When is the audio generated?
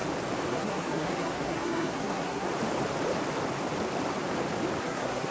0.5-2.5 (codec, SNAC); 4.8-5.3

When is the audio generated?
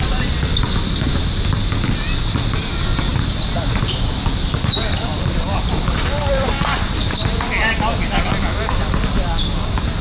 5.1-7.0 (vocoder, BigVGAN v2)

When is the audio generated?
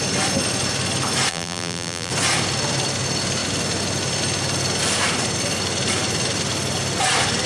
1.3-2.1 (vocoder, BigVGAN v2)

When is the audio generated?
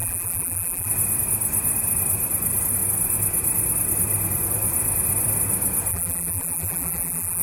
0.0-0.9 (vocoder, BigVGAN v2); 5.9-7.4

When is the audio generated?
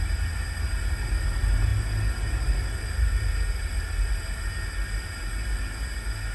none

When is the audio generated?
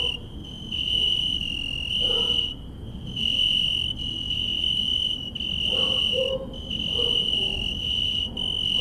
0.4-1.9 (vocoder, BigVGAN v2); 4.9-6.0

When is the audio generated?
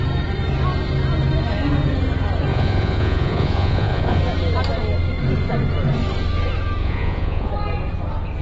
2.5-4.2 (vocoder, Vocos); 6.8-7.5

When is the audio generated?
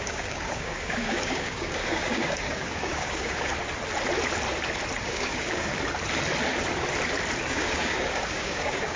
0.0-3.5 (codec, DAC); 5.0-5.7; 7.5-9.0